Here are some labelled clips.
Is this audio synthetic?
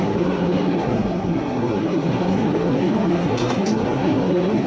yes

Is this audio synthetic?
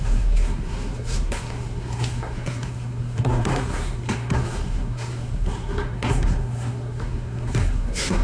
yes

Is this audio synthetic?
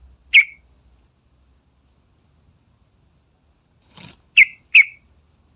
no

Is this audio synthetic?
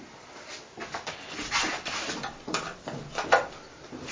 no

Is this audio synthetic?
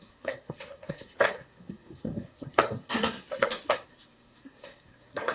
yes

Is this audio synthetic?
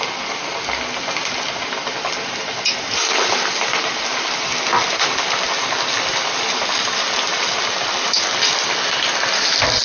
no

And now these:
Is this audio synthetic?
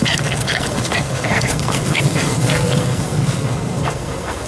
yes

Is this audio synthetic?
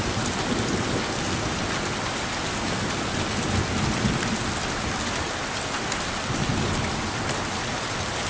no